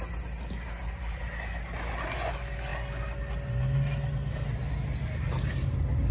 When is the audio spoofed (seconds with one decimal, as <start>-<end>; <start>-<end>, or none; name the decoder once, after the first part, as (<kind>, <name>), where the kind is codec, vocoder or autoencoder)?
none